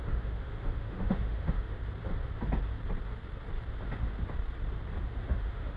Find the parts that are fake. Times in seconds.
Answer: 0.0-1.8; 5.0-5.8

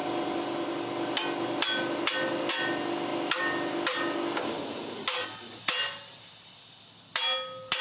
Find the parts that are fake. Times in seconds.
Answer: none